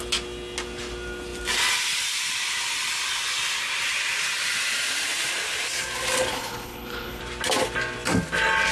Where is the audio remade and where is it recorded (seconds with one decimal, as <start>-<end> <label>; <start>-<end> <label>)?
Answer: 0.0-6.3 recorded; 6.3-7.2 remade; 7.2-8.7 recorded